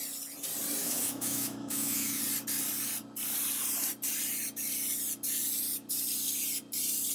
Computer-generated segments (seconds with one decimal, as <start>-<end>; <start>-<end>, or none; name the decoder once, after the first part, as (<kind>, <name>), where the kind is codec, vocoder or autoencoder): 0.8-2.2 (autoencoder, DAC-VAE)